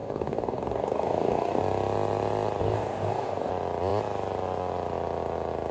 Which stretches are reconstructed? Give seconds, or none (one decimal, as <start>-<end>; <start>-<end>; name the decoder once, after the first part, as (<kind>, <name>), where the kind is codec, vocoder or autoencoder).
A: 0.0-1.6 (codec, DAC); 2.6-3.5